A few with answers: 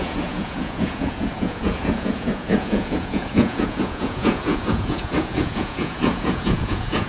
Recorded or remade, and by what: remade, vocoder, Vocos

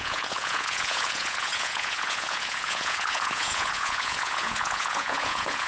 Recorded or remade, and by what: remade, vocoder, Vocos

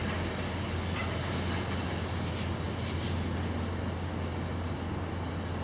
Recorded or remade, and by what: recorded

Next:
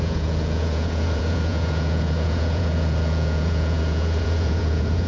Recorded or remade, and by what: remade, vocoder, Vocos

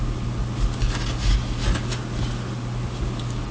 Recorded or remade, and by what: recorded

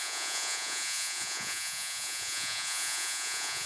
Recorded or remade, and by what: remade, vocoder, Vocos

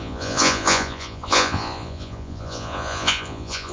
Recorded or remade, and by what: remade, vocoder, Vocos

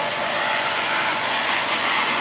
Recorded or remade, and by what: remade, vocoder, Vocos